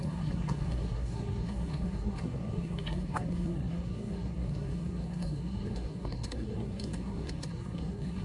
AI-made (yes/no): yes